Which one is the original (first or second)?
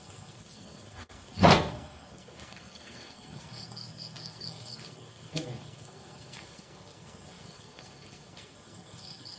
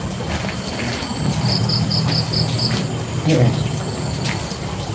second